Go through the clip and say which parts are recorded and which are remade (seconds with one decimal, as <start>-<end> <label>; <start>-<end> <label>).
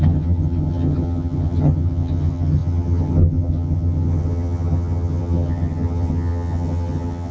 0.0-7.3 remade